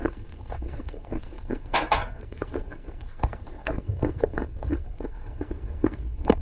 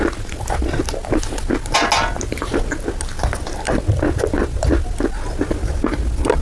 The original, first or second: second